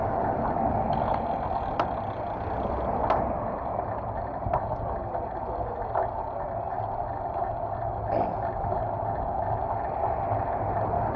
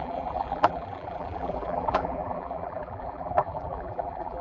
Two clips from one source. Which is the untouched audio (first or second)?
first